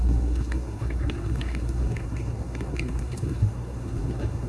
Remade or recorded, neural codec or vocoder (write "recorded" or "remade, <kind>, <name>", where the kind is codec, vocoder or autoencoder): remade, codec, SNAC